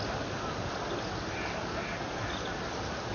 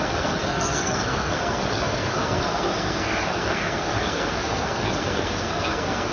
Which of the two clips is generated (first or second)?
second